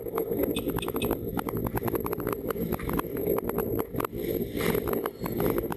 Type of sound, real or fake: real